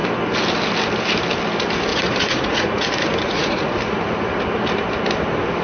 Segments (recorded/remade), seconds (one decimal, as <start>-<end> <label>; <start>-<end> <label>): 0.0-1.9 recorded; 1.9-3.8 remade; 3.8-5.6 recorded